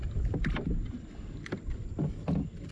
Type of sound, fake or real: real